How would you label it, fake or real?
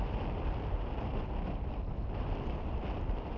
real